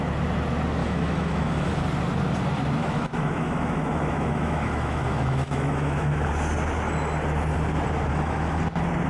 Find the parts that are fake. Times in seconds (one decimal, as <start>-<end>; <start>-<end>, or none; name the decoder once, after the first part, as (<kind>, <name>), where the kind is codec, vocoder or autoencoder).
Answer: 0.8-1.7 (autoencoder, DAC-VAE); 2.8-6.3; 8.1-8.6